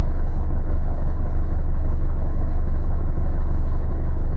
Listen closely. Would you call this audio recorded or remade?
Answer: remade